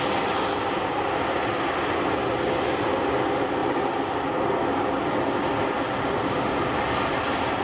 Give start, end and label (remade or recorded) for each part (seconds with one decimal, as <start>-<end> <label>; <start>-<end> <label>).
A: 0.0-7.6 recorded